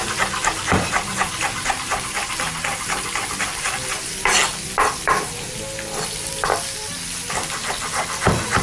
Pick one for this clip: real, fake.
real